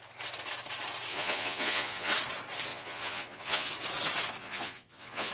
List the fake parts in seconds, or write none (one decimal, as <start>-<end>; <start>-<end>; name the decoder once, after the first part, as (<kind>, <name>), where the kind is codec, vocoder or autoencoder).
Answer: 1.1-2.1 (vocoder, Vocos); 2.7-3.7; 4.4-5.3

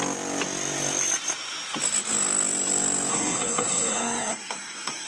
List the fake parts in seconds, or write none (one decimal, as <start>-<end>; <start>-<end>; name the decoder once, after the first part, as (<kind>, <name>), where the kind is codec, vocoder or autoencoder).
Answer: 3.1-5.1 (codec, SNAC)

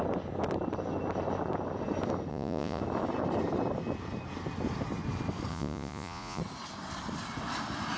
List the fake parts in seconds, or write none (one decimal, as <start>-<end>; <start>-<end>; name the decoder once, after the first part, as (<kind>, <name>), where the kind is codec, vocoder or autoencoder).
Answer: 2.3-2.8 (vocoder, Vocos); 5.5-6.4

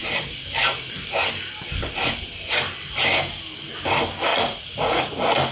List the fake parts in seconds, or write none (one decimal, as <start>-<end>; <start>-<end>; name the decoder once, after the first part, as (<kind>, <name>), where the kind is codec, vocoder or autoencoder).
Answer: 4.3-5.1 (vocoder, Vocos)

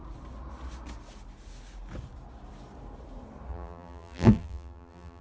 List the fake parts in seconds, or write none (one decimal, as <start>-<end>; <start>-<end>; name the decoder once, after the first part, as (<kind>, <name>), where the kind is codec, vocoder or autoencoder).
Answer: 3.5-5.2 (vocoder, BigVGAN v2)

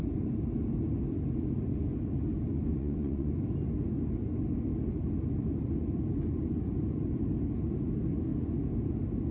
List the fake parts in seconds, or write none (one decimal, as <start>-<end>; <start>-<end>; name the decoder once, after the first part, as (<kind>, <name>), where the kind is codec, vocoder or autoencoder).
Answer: 2.7-3.3 (vocoder, Vocos)